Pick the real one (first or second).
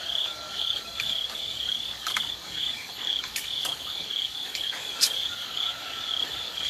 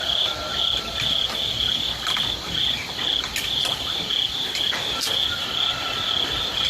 second